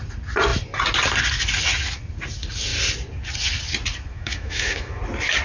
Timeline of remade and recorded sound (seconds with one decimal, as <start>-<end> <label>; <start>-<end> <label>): 0.0-4.1 recorded; 4.1-5.0 remade; 5.0-5.4 recorded